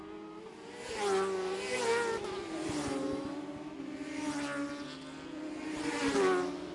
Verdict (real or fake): real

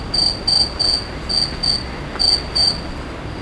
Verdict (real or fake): real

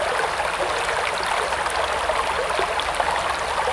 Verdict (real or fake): real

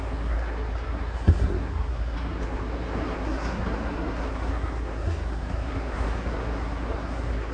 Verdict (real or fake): fake